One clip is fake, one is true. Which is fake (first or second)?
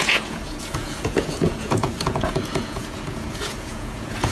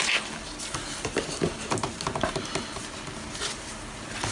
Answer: first